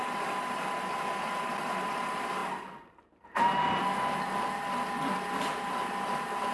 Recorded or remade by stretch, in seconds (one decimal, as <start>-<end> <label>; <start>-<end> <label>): 0.0-6.5 recorded